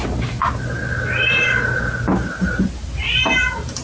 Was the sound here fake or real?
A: real